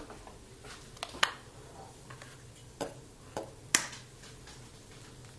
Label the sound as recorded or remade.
recorded